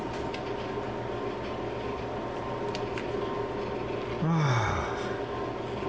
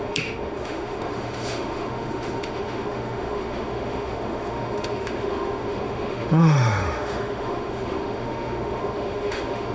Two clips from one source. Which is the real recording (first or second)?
first